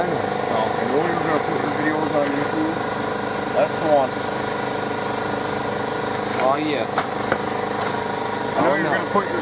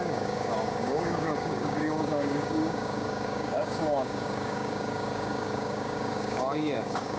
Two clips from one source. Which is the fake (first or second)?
second